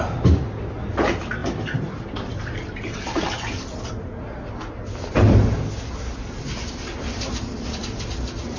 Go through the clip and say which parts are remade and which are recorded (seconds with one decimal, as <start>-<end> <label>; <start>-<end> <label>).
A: 0.0-8.6 recorded